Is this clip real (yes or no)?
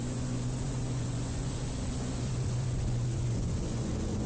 no